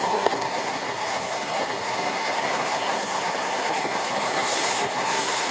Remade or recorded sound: remade